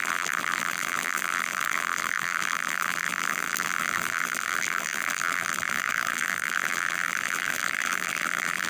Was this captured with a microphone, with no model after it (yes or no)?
no